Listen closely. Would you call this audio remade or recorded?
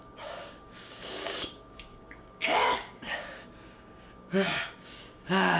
remade